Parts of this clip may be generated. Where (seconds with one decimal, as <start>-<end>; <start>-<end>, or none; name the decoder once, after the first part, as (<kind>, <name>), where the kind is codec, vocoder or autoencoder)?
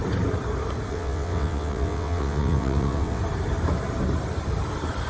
0.9-3.2 (vocoder, WaveNeXt)